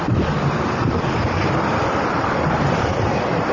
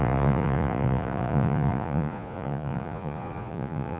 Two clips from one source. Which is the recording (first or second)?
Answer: first